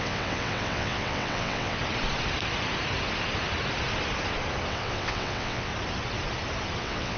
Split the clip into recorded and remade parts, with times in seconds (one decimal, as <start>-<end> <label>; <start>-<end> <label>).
0.0-1.8 remade; 1.8-4.7 recorded; 4.7-5.7 remade; 5.7-6.8 recorded; 6.8-7.2 remade